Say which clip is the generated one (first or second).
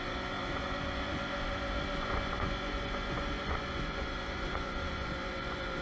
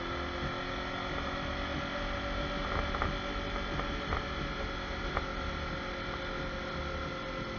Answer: first